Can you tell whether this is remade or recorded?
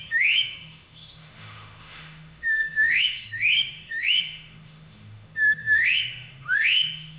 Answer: remade